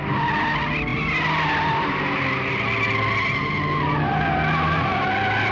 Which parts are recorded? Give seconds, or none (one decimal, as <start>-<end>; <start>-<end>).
0.0-5.5